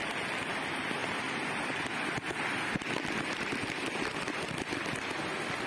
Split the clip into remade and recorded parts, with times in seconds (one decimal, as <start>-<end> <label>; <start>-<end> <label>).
0.0-5.7 recorded